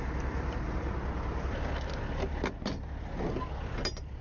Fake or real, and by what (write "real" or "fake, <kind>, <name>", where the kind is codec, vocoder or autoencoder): real